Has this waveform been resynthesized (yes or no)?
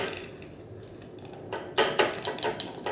no